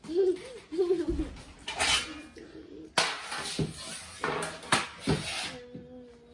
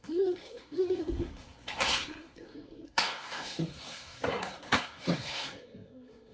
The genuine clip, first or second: first